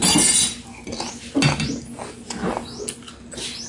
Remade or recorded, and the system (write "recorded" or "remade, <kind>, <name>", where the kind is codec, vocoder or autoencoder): recorded